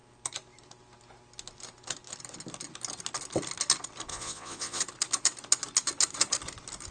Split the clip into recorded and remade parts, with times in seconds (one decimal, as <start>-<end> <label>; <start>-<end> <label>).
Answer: 0.0-4.1 recorded; 4.1-4.8 remade; 4.8-6.9 recorded